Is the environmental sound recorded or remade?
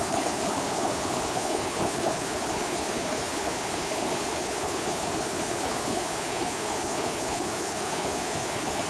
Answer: remade